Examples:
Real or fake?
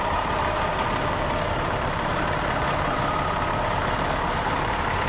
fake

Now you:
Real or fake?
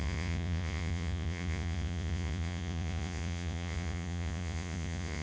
fake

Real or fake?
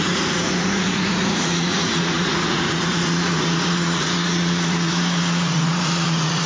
fake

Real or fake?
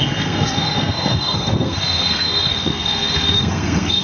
fake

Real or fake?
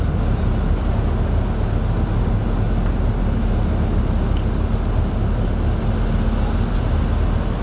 real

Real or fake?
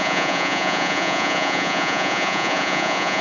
fake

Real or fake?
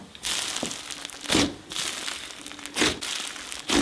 real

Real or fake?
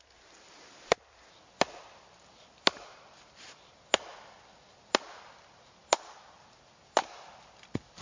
real